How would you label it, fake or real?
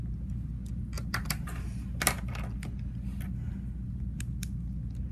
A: real